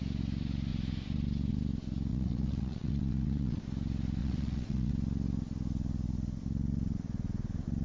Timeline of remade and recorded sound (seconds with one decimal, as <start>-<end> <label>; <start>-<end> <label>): 0.0-2.1 recorded; 2.1-3.6 remade; 3.6-4.2 recorded; 4.2-4.9 remade; 4.9-7.8 recorded